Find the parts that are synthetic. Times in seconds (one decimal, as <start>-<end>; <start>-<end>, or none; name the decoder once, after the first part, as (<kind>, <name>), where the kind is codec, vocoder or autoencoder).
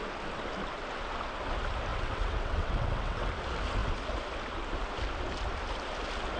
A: 1.9-3.3 (vocoder, WaveNeXt)